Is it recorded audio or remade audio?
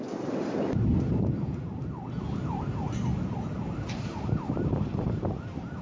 recorded